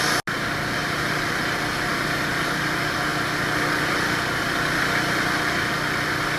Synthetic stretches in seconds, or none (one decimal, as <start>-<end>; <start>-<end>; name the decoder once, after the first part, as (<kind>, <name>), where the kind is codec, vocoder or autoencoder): none